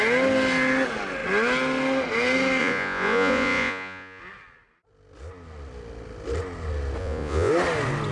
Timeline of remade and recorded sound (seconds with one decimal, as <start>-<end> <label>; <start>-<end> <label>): 0.0-2.6 recorded; 2.6-4.2 remade; 4.2-7.0 recorded; 7.0-7.5 remade; 7.5-8.1 recorded